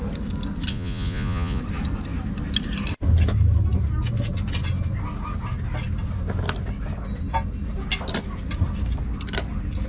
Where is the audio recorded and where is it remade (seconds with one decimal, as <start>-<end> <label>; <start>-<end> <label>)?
0.0-0.7 recorded; 0.7-1.6 remade; 1.6-9.9 recorded